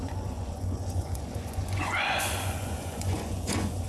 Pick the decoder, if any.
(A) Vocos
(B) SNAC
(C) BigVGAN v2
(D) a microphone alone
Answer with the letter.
A